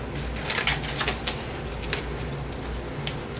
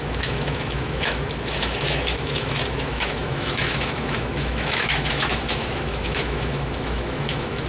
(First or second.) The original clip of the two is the first